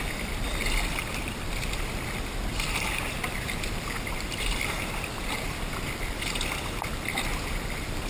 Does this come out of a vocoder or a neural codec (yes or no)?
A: no